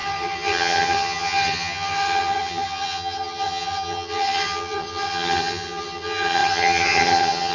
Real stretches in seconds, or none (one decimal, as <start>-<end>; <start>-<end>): none